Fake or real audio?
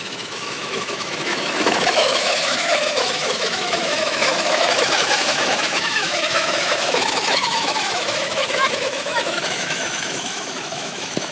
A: fake